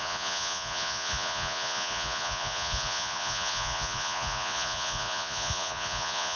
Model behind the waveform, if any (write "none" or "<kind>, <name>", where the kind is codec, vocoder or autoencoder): vocoder, Vocos